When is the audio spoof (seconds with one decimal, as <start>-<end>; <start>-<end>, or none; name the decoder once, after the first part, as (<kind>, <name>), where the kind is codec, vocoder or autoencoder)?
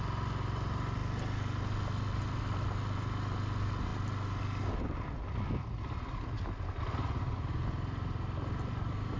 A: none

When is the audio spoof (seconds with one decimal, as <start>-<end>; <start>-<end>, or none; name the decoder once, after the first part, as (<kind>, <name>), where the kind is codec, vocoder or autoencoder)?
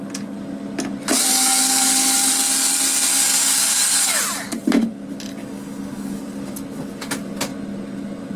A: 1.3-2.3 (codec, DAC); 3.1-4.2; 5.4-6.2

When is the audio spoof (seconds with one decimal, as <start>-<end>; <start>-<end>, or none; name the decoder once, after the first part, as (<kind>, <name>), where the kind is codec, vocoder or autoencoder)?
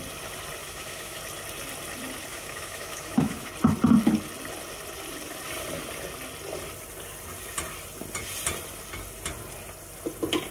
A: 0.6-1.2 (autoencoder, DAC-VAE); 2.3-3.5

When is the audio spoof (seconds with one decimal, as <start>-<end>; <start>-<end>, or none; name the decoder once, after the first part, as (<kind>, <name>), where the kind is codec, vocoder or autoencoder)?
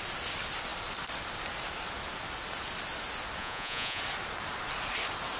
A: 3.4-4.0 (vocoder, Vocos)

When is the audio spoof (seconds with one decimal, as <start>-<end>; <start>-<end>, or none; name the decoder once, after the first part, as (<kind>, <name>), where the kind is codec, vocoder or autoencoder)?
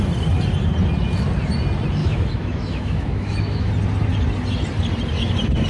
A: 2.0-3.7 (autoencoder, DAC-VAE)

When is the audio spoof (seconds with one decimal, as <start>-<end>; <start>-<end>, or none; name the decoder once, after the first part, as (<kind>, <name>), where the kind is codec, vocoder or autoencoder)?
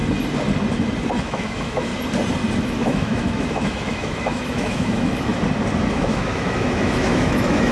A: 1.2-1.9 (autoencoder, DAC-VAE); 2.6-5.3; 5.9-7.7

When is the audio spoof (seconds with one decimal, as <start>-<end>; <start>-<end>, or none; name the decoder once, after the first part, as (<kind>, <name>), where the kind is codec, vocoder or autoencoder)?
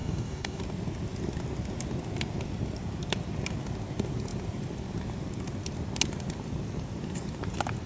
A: 0.0-0.6 (codec, DAC)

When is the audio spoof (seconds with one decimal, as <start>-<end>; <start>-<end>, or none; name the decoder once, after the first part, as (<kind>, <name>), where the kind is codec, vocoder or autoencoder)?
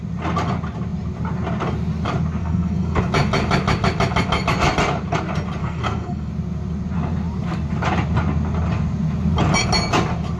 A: 2.4-3.0 (codec, SNAC); 5.6-6.3